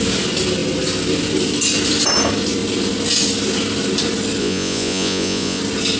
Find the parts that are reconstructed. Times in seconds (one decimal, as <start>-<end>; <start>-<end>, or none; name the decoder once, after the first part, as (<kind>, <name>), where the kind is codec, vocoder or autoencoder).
4.4-5.6 (vocoder, Vocos)